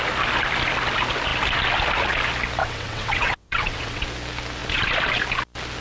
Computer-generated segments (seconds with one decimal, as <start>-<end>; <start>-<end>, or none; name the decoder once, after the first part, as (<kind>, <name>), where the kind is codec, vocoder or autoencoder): 2.6-4.0 (vocoder, WaveNeXt)